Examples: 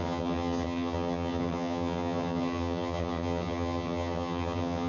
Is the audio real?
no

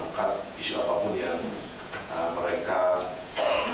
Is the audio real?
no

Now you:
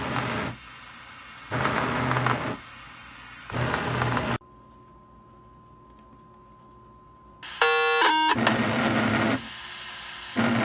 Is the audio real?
yes